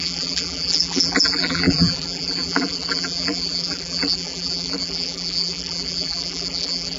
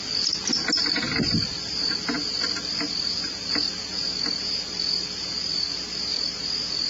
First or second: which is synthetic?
first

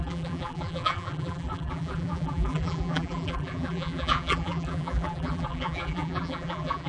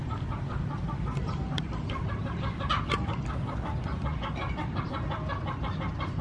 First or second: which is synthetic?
first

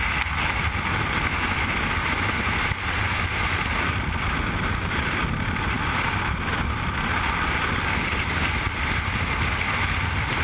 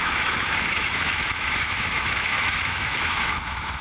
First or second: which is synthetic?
second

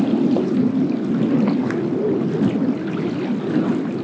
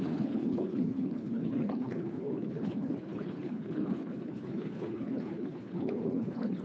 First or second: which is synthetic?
second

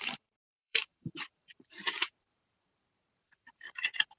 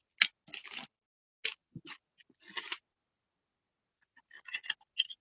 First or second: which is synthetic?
first